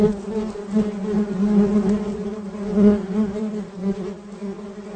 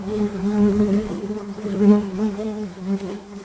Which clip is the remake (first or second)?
second